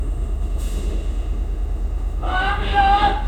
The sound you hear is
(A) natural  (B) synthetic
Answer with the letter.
B